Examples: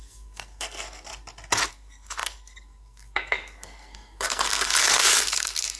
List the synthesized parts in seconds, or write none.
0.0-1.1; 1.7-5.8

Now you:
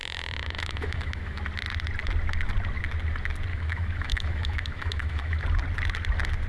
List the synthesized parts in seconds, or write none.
0.0-1.4; 3.5-5.4

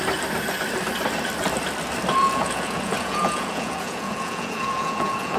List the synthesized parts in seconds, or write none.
2.1-5.4

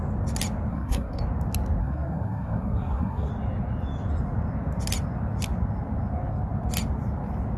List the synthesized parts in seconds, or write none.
0.7-1.2; 1.8-3.3

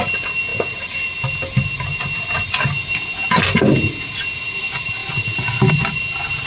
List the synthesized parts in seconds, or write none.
none

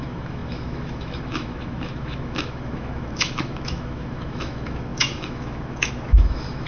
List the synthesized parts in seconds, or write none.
0.0-6.7